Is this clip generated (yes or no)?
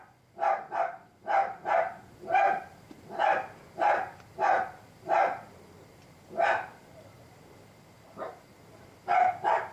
yes